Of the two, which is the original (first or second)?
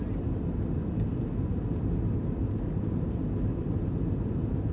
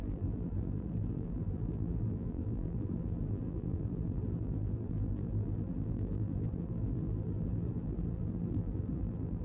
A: first